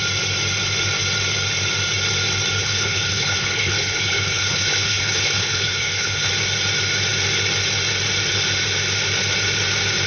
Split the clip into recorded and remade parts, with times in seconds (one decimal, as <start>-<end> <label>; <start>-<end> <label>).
0.0-2.6 recorded; 2.6-6.3 remade; 6.3-10.1 recorded